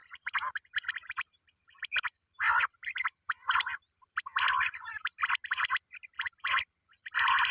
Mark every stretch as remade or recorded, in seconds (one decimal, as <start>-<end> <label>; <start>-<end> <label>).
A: 0.0-7.5 recorded